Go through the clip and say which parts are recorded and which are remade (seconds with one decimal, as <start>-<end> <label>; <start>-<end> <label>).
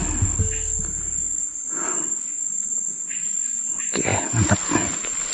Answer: 0.0-5.3 recorded